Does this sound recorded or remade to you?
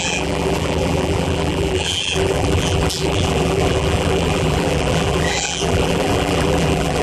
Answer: remade